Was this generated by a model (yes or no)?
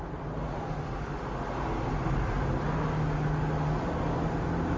no